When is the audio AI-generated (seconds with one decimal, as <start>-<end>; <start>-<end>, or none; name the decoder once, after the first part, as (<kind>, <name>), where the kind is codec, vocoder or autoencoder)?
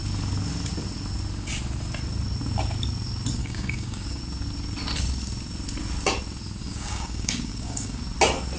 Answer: 3.4-4.2 (codec, DAC); 6.6-8.0